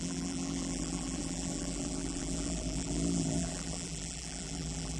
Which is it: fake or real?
fake